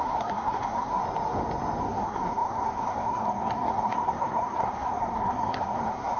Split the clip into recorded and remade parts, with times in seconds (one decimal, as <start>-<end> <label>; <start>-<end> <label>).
0.0-1.0 remade; 1.0-1.8 recorded; 1.8-6.2 remade